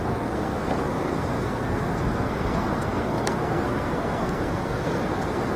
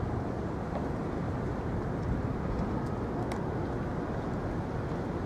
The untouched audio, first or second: second